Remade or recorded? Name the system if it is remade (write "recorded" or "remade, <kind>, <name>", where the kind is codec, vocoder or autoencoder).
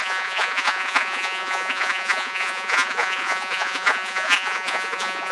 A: remade, vocoder, Vocos